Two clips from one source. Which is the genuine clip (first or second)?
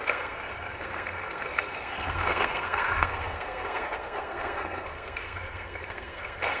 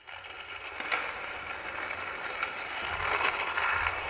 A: second